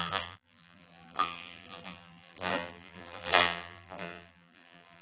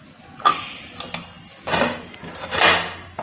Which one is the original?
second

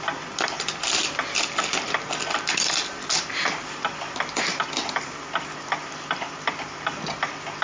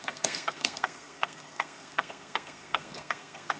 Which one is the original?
first